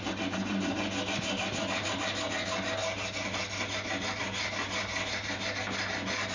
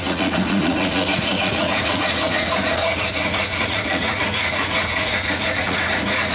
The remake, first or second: second